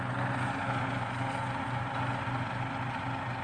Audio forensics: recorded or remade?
recorded